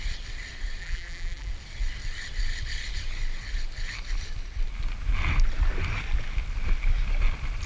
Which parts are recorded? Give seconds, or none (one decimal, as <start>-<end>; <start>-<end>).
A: 0.0-0.8; 1.5-7.7